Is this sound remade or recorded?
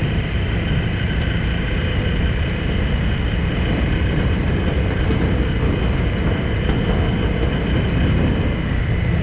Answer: recorded